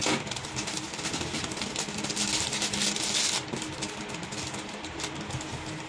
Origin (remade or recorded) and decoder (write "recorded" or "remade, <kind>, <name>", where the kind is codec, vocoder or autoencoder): recorded